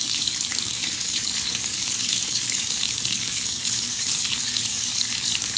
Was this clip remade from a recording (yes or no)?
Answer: yes